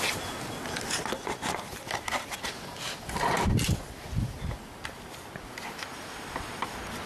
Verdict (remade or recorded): recorded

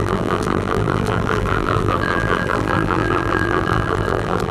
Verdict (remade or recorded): remade